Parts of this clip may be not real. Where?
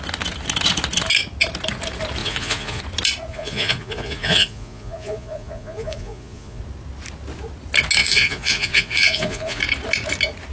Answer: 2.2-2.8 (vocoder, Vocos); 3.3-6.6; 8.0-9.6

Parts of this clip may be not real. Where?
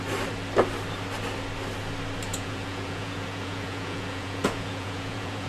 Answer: 2.3-5.5 (vocoder, Vocos)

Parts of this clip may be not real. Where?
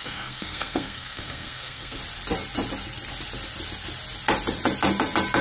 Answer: 0.0-2.0 (codec, SNAC)